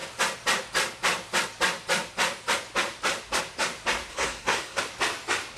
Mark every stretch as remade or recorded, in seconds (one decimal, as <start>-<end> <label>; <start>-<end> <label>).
0.0-4.1 recorded; 4.1-4.8 remade; 4.8-5.6 recorded